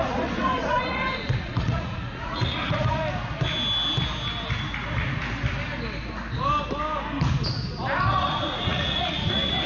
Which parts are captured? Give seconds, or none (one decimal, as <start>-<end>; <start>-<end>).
3.0-8.1